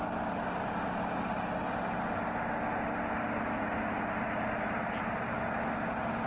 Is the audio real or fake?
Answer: real